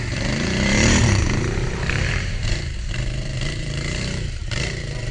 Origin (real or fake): fake